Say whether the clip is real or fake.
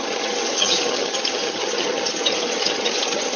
fake